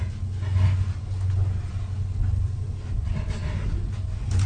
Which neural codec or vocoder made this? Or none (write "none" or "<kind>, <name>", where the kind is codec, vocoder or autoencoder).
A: none